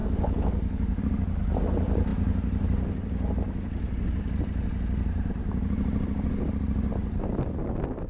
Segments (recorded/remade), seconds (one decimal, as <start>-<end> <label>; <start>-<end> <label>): 0.0-1.0 remade; 1.0-8.1 recorded